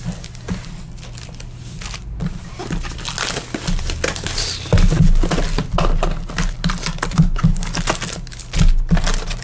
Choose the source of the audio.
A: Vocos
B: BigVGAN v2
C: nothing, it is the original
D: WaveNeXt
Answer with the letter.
C